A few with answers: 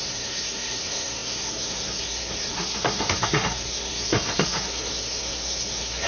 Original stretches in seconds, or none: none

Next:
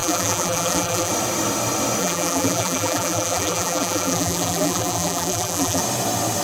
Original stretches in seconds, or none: 1.1-2.0; 5.8-6.4

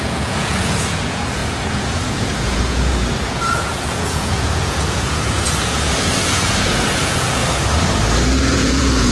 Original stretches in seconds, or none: 7.4-8.3

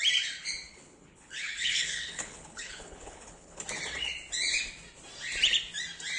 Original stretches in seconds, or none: 0.0-0.7; 3.6-6.2

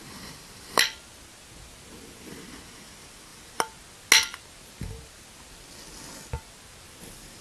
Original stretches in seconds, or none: 0.0-7.4

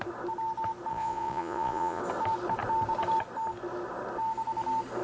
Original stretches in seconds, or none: 0.0-0.9; 2.0-5.0

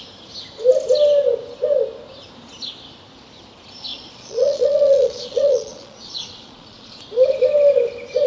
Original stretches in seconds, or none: 0.0-3.9; 7.0-8.3

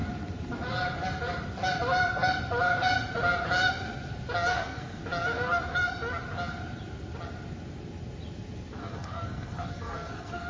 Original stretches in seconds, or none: 0.0-4.5; 5.0-8.8